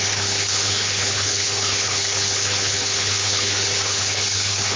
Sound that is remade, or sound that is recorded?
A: remade